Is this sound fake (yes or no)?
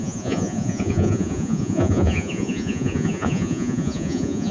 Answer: yes